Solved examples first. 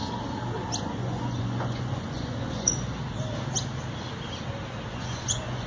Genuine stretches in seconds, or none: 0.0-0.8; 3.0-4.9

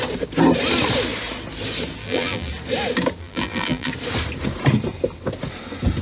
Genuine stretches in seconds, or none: 0.0-2.0; 2.5-3.2; 3.9-6.0

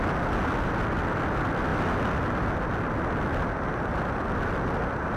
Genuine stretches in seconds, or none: 0.0-5.2

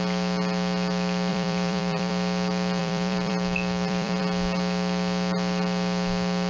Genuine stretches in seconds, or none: 0.0-1.3; 2.1-2.8; 4.2-6.5

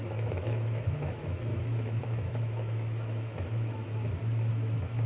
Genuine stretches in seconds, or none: 3.8-4.5

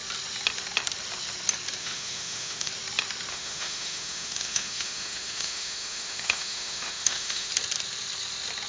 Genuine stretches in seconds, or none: 0.0-1.8; 2.7-3.3; 7.5-8.7

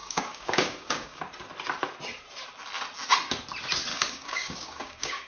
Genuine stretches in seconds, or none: 1.2-3.9

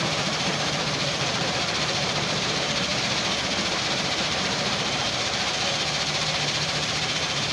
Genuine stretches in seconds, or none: 2.9-3.8